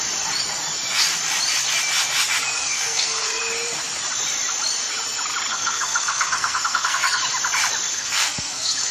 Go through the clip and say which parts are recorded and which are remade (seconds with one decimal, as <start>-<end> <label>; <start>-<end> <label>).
0.0-2.6 recorded; 2.6-3.4 remade; 3.4-5.5 recorded; 5.5-7.2 remade; 7.2-7.9 recorded; 7.9-8.9 remade